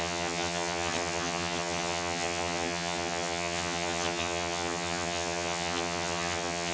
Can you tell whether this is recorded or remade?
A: remade